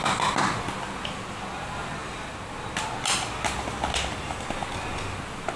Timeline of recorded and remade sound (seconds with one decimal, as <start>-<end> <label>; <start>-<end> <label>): 0.0-5.6 recorded